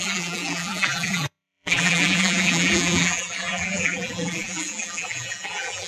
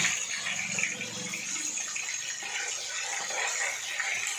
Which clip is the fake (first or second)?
first